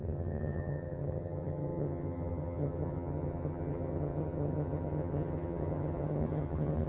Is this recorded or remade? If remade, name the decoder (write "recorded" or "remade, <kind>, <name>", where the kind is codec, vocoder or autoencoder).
remade, vocoder, HiFi-GAN